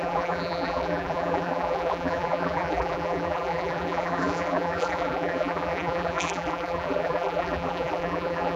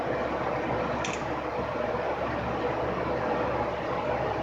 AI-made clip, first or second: first